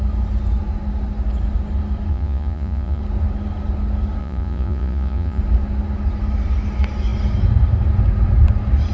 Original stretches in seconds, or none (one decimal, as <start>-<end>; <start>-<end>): 0.0-2.1; 3.0-4.2; 5.4-8.9